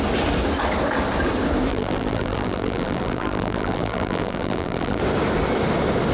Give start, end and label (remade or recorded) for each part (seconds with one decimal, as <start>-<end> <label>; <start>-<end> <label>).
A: 0.0-1.7 recorded; 1.7-5.0 remade; 5.0-6.1 recorded